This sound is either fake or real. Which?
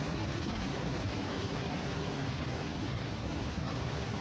fake